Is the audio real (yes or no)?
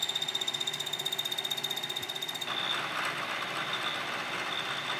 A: yes